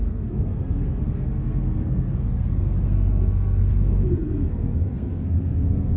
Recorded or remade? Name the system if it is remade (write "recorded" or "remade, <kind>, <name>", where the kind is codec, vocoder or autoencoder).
remade, codec, SNAC